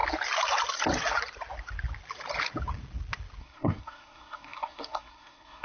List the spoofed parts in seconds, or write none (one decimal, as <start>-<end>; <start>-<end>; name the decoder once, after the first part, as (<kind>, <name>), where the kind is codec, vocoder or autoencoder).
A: 3.4-5.6 (codec, SNAC)